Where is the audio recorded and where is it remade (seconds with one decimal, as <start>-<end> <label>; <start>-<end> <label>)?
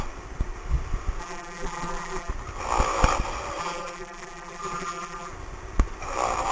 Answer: 0.0-1.2 recorded; 1.2-2.3 remade; 2.3-3.6 recorded; 3.6-5.3 remade; 5.3-6.5 recorded